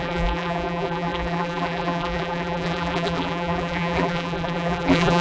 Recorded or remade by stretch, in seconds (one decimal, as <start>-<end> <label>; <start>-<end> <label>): 0.0-5.2 remade